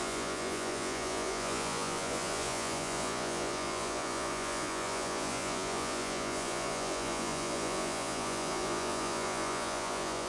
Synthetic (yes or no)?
yes